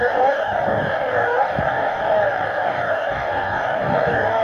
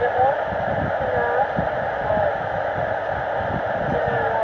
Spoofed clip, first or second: first